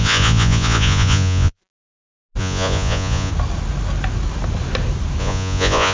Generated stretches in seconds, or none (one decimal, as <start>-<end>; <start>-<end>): 0.0-1.6; 2.4-3.3; 5.2-5.9